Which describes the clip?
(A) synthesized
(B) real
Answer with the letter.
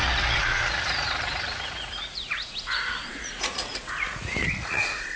A